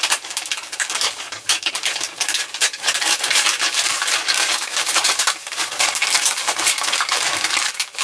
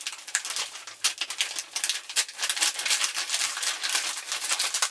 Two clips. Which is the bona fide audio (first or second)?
second